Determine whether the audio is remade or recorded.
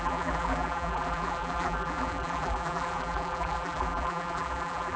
remade